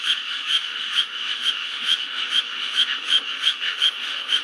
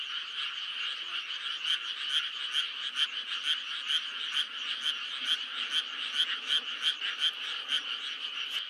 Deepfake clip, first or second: first